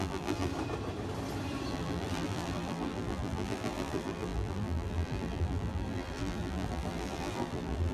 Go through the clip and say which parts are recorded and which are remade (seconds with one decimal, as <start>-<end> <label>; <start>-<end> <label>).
0.0-0.5 remade; 0.5-1.7 recorded; 1.7-7.9 remade